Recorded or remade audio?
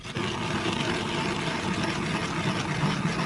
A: recorded